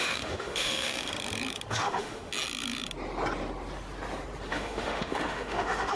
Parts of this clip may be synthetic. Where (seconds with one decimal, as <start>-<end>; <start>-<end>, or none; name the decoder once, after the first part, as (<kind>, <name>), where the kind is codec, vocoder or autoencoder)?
0.0-1.1 (autoencoder, DAC-VAE); 1.7-2.3; 4.5-5.9